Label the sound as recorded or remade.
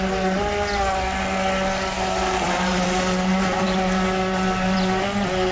recorded